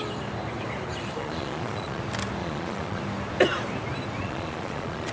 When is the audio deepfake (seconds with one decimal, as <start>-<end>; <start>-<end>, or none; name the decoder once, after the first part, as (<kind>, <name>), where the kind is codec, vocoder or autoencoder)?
1.2-2.0 (vocoder, Vocos); 2.4-3.0; 4.2-5.1